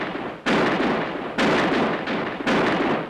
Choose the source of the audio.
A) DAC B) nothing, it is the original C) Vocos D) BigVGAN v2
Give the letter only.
B